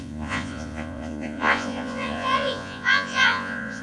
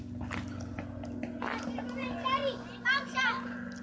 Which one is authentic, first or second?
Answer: second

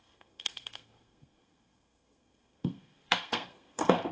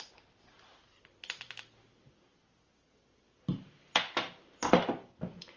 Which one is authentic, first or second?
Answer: second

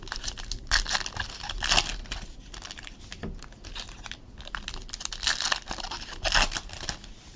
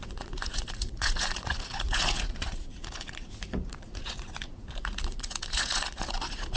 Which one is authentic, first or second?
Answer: first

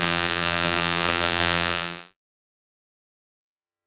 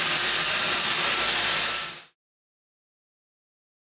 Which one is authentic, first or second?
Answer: second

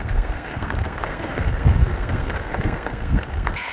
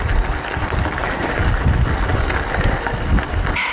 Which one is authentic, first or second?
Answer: second